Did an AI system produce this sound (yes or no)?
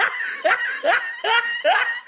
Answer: no